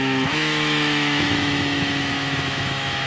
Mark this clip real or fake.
fake